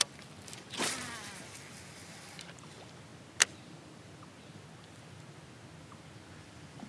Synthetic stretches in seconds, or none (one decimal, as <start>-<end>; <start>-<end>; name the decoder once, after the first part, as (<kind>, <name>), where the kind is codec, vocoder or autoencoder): 0.0-3.1 (vocoder, BigVGAN v2); 6.4-6.9